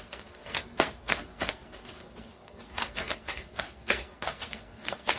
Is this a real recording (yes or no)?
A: no